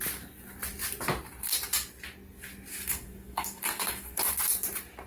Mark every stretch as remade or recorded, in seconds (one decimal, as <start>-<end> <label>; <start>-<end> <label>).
0.0-2.7 recorded; 2.7-4.2 remade; 4.2-5.1 recorded

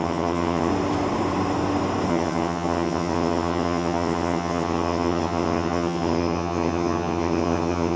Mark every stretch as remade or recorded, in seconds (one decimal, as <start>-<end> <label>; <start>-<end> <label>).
0.0-0.7 remade; 0.7-2.1 recorded; 2.1-8.0 remade

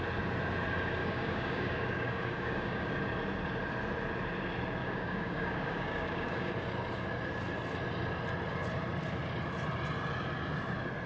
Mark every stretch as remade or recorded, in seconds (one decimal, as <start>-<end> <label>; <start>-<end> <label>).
0.0-1.0 recorded; 1.0-2.9 remade; 2.9-4.8 recorded; 4.8-6.5 remade; 6.5-11.1 recorded

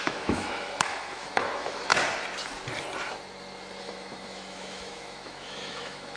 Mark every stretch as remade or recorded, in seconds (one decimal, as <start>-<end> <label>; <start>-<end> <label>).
0.0-1.9 remade; 1.9-3.8 recorded; 3.8-6.2 remade

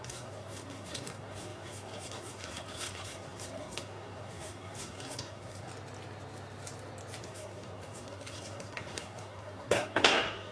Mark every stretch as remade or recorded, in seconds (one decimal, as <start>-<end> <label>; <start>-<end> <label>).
0.0-5.7 remade; 5.7-7.2 recorded; 7.2-10.5 remade

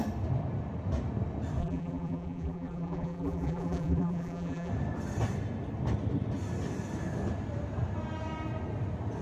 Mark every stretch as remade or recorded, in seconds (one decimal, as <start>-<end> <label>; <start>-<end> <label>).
0.0-1.6 recorded; 1.6-4.7 remade; 4.7-9.2 recorded

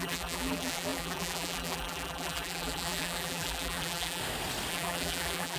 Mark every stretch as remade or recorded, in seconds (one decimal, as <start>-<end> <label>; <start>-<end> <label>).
0.0-4.2 remade; 4.2-4.7 recorded; 4.7-5.6 remade

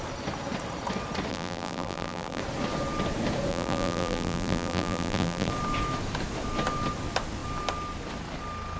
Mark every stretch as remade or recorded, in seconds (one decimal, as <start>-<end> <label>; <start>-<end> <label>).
0.0-1.3 recorded; 1.3-2.4 remade; 2.4-3.5 recorded; 3.5-5.5 remade; 5.5-8.8 recorded